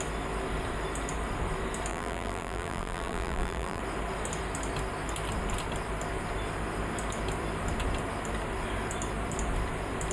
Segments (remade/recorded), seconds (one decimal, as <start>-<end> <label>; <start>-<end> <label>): 0.0-1.9 recorded; 1.9-3.8 remade; 3.8-10.1 recorded